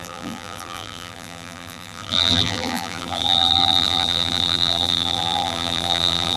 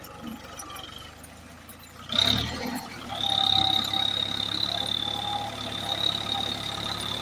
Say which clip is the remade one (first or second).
first